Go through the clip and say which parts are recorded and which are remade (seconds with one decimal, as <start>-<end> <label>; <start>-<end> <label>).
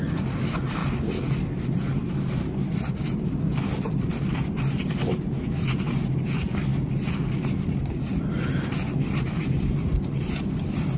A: 0.0-11.0 recorded